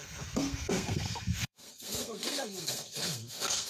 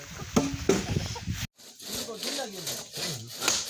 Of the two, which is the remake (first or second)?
first